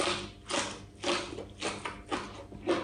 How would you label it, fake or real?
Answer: real